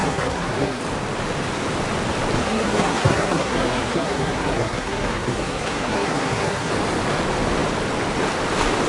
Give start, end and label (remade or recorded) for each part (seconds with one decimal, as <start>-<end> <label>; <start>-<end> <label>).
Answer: 0.0-0.8 remade; 0.8-2.4 recorded; 2.4-6.7 remade; 6.7-8.9 recorded